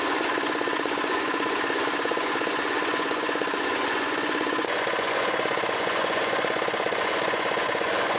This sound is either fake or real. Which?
fake